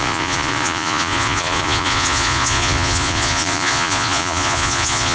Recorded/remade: remade